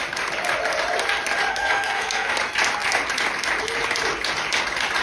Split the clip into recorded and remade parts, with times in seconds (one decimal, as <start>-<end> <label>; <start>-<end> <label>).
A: 0.0-1.5 recorded; 1.5-2.3 remade; 2.3-5.0 recorded